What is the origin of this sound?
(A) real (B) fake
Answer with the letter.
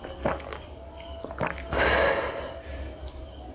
A